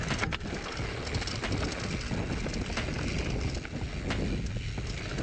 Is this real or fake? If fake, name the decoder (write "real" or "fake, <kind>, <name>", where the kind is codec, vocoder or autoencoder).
real